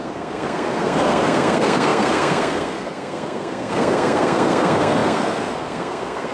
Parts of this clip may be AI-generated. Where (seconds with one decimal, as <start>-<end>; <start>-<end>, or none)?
0.0-6.3